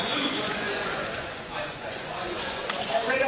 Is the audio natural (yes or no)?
no